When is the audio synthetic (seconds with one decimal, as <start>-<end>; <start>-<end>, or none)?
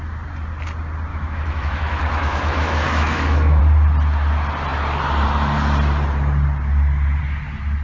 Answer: 1.1-3.6